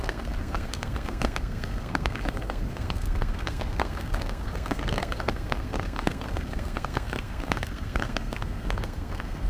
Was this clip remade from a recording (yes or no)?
yes